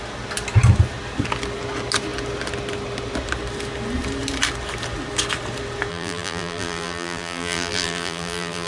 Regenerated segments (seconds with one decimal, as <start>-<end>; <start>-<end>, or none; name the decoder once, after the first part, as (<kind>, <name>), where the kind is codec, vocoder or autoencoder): 5.9-8.7 (vocoder, BigVGAN v2)